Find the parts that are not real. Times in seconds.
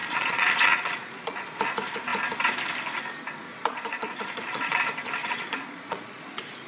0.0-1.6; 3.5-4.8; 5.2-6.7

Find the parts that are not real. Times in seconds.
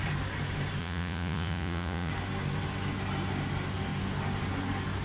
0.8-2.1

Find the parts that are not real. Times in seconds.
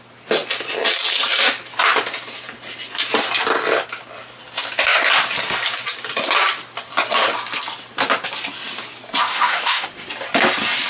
9.3-10.1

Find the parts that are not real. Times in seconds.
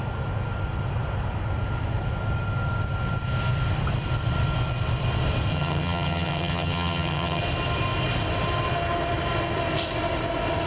5.5-7.4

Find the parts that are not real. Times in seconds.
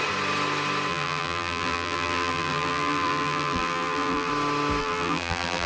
0.9-4.3; 4.8-5.7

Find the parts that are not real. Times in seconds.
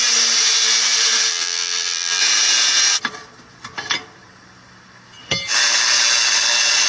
1.3-2.2